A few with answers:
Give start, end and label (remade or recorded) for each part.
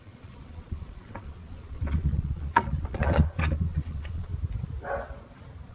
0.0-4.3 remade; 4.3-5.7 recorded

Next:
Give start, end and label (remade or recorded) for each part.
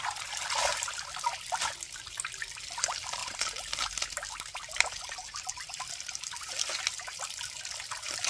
0.0-0.7 recorded; 0.7-1.6 remade; 1.6-3.2 recorded; 3.2-6.3 remade; 6.3-8.3 recorded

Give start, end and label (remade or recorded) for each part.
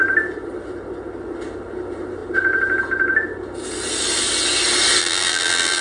0.0-5.0 recorded; 5.0-5.8 remade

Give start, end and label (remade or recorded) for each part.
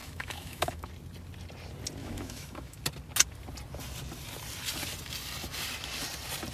0.0-0.9 remade; 0.9-2.0 recorded; 2.0-2.8 remade; 2.8-6.5 recorded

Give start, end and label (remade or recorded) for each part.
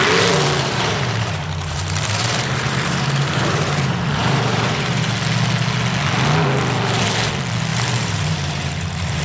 0.0-0.6 recorded; 0.6-5.1 remade; 5.1-7.7 recorded; 7.7-9.2 remade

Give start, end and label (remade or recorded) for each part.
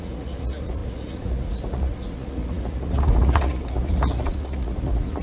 0.0-5.2 remade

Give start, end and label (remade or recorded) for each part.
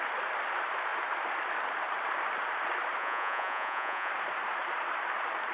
0.0-3.0 recorded; 3.0-4.1 remade; 4.1-5.5 recorded